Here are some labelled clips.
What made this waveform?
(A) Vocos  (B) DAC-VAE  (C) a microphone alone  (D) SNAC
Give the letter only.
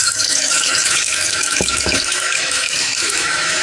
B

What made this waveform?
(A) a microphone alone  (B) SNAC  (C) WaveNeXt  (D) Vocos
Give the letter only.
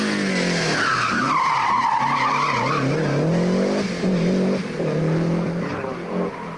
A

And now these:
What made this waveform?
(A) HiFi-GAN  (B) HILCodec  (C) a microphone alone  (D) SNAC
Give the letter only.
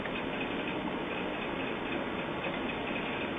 C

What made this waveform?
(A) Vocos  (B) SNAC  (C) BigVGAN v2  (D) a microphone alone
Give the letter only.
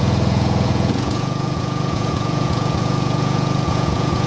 A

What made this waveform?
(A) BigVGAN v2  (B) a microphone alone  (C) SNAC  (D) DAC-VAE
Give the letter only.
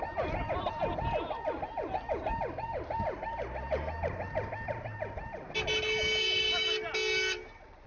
B